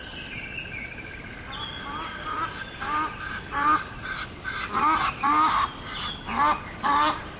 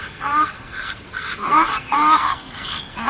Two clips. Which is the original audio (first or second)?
first